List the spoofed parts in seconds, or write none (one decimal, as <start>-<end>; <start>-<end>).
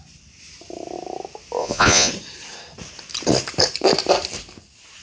1.6-2.1